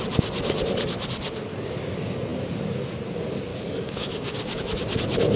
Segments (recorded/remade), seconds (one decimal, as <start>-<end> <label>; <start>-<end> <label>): 0.0-3.5 recorded; 3.5-4.6 remade; 4.6-5.4 recorded